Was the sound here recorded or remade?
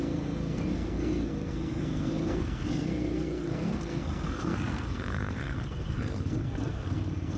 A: remade